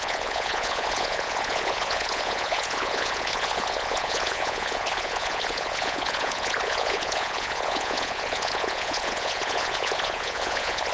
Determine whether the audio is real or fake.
fake